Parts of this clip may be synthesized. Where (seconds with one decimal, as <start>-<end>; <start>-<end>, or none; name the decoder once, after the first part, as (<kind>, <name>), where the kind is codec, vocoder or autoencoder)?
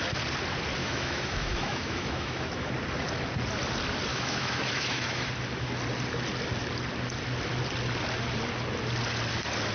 0.8-2.7 (autoencoder, DAC-VAE); 4.1-5.3